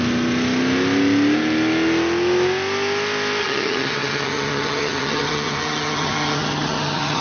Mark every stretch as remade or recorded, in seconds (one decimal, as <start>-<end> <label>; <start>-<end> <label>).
0.0-3.4 recorded; 3.4-7.2 remade

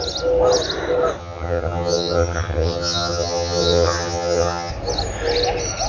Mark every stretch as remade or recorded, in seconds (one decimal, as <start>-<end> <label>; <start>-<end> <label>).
0.0-1.2 recorded; 1.2-4.7 remade; 4.7-5.9 recorded

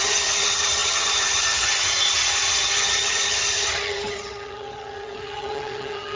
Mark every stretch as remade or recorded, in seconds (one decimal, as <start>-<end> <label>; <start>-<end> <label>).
0.0-6.2 remade

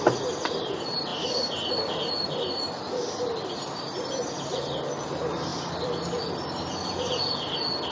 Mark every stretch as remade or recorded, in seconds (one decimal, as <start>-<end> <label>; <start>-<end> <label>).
0.0-7.9 recorded

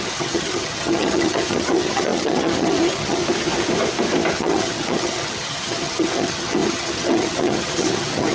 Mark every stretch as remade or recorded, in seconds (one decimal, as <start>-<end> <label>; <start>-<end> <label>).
0.0-3.2 remade; 3.2-4.3 recorded; 4.3-8.3 remade

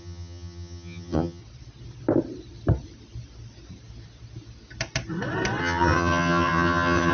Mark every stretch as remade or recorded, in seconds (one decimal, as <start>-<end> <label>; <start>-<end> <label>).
0.0-1.4 remade; 1.4-5.6 recorded; 5.6-7.1 remade

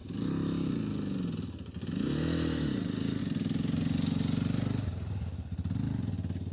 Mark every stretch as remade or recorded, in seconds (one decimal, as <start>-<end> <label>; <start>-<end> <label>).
0.0-6.5 recorded

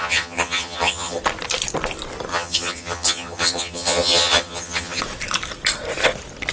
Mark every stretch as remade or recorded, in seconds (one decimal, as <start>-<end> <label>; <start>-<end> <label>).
0.0-1.2 remade; 1.2-2.3 recorded; 2.3-5.0 remade; 5.0-6.5 recorded